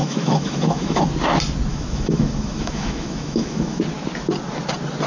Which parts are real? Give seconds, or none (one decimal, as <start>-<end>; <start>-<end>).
1.1-1.7; 3.8-5.1